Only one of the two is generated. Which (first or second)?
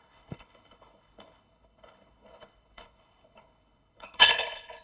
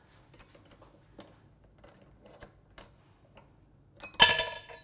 first